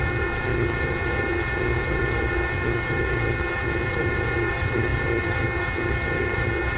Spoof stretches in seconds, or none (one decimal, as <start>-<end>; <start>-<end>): 0.0-6.8